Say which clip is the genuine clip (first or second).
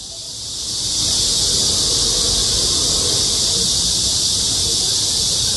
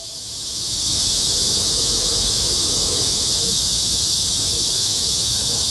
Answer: first